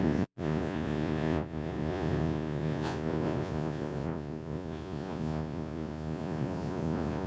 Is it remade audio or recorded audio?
remade